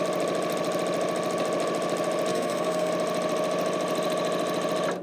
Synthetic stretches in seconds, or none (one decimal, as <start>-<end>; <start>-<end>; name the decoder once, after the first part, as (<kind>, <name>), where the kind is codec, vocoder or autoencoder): 2.3-2.9 (codec, SNAC)